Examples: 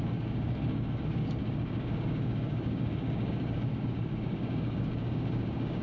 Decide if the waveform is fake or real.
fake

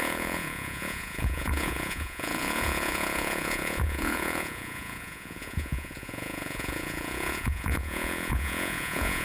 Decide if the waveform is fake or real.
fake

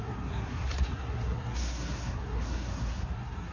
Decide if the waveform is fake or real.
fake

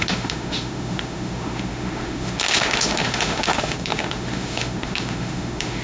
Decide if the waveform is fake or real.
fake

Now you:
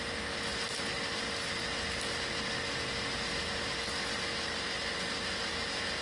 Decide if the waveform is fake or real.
real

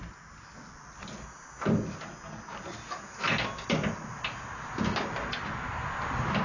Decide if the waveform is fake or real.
real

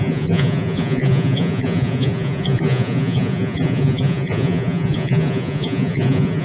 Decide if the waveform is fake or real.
fake